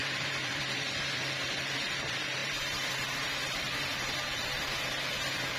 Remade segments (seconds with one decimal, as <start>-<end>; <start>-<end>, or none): 0.0-5.6